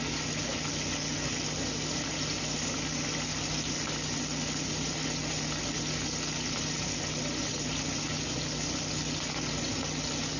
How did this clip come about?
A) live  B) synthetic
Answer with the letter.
A